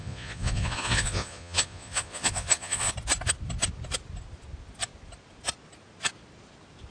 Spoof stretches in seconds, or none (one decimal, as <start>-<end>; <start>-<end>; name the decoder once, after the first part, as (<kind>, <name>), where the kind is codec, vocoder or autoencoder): 0.0-2.9 (vocoder, Vocos)